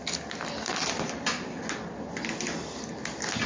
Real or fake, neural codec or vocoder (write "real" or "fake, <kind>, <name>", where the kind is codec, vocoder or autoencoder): real